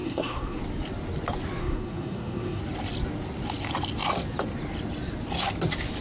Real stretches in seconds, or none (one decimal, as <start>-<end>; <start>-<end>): 0.6-1.6; 2.6-6.0